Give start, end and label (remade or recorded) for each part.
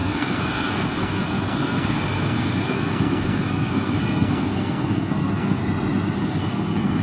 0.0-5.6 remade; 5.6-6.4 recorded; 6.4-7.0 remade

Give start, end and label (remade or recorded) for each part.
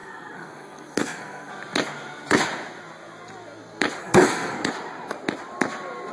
0.0-1.5 remade; 1.5-4.0 recorded; 4.0-4.7 remade; 4.7-6.1 recorded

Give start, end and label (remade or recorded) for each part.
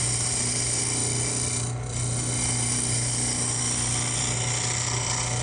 0.0-5.4 recorded